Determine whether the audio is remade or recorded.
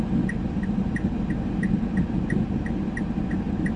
recorded